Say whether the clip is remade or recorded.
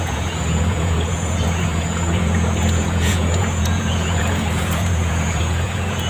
remade